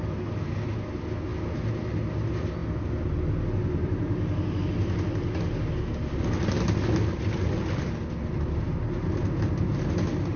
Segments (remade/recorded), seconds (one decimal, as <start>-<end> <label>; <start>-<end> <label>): 0.0-10.4 recorded